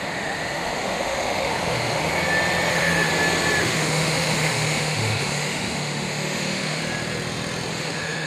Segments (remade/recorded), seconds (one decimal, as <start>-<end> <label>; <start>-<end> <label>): 0.0-2.1 remade; 2.1-2.7 recorded; 2.7-3.1 remade; 3.1-3.6 recorded; 3.6-6.8 remade; 6.8-7.7 recorded; 7.7-8.3 remade